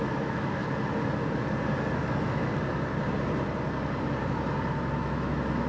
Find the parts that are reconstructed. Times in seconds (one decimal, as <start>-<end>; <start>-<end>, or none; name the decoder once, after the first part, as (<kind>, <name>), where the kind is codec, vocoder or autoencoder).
0.0-0.6 (autoencoder, DAC-VAE); 1.9-2.5; 4.9-5.7